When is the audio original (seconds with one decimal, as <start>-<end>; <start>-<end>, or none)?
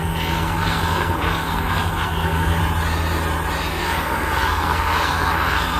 2.6-3.7